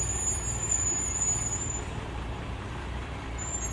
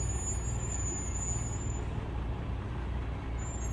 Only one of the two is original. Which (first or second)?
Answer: second